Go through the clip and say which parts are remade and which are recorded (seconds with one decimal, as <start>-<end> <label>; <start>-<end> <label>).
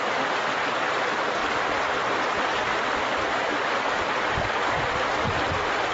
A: 0.0-5.9 recorded